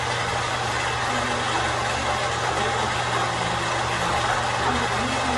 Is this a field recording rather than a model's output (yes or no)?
yes